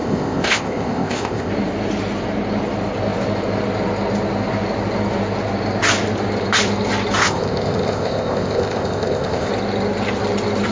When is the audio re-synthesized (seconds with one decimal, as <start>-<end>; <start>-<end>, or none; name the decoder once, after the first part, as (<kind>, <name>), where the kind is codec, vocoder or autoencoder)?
0.0-1.5 (codec, ZipCodec); 7.2-9.5